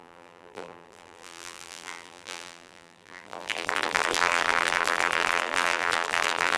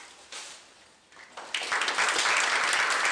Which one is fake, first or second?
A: first